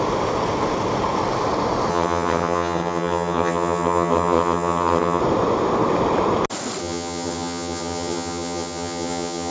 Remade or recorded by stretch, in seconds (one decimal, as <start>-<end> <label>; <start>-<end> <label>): 0.0-1.9 recorded; 1.9-5.2 remade; 5.2-6.8 recorded; 6.8-9.5 remade